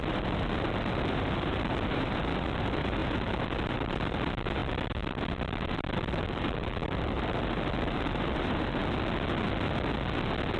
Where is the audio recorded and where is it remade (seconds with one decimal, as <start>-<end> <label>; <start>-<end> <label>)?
0.0-8.8 remade; 8.8-10.6 recorded